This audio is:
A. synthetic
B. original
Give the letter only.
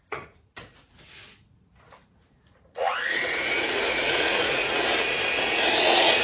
A